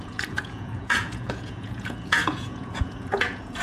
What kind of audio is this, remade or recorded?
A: remade